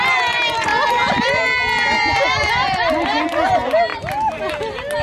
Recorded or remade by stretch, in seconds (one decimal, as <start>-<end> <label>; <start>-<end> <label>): 0.0-5.0 recorded